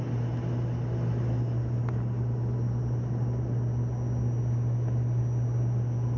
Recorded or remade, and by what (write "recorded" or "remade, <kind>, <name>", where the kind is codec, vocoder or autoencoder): recorded